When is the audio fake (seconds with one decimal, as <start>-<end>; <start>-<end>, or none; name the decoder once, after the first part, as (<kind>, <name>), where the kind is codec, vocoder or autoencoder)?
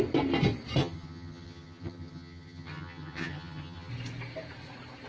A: 0.8-3.9 (vocoder, HiFi-GAN)